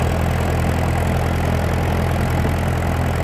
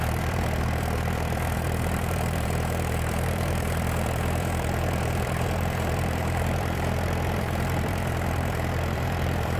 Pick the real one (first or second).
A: first